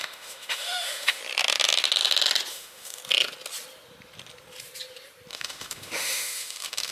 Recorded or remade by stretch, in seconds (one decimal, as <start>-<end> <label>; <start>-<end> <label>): 0.0-1.2 remade; 1.2-2.5 recorded; 2.5-3.0 remade; 3.0-5.3 recorded; 5.3-6.9 remade